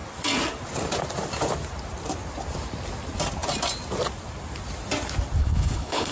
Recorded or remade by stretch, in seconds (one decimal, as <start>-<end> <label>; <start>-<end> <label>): 0.0-5.4 recorded; 5.4-6.1 remade